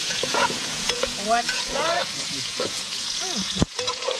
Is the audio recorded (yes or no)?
no